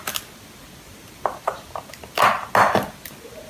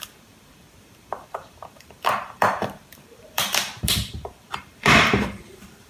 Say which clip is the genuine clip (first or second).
first